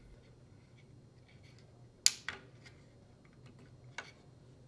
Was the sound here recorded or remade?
recorded